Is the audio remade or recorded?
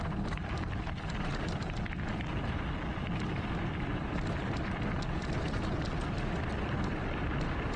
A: remade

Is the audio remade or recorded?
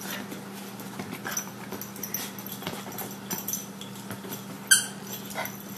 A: recorded